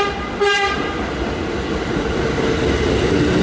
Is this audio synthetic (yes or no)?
no